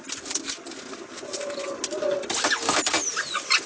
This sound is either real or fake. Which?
real